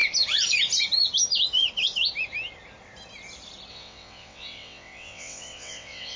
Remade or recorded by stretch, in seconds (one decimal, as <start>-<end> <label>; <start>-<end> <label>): 0.0-3.7 recorded; 3.7-6.2 remade